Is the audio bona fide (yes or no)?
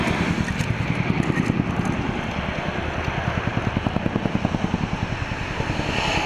yes